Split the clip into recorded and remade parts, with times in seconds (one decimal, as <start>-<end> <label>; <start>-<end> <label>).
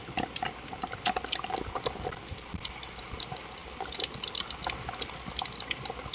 0.0-6.1 recorded